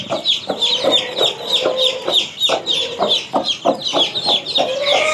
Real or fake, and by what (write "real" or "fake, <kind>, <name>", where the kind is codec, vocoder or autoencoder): real